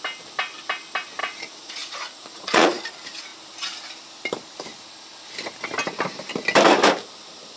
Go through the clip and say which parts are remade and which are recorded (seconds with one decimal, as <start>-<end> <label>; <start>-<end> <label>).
0.0-1.2 recorded; 1.2-2.8 remade; 2.8-7.6 recorded